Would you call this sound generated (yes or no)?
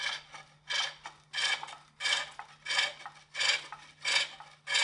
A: no